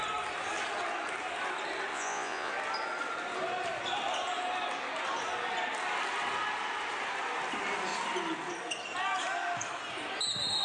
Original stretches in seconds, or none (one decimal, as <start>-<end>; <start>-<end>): 0.0-1.9; 2.5-10.6

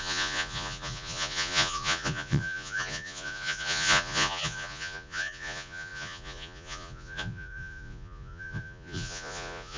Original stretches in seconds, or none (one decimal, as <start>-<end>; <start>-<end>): none